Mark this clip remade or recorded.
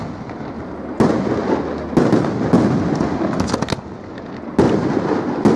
recorded